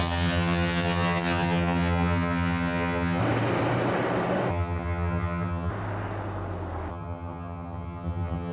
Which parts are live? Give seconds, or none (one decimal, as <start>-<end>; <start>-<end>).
3.2-4.5; 5.7-6.9